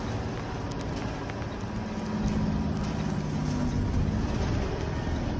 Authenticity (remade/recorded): recorded